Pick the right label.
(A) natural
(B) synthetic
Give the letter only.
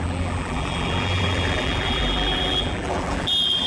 B